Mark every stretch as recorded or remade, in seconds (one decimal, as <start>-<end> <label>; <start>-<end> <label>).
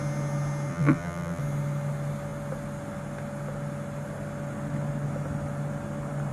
0.0-0.7 recorded; 0.7-1.4 remade; 1.4-6.3 recorded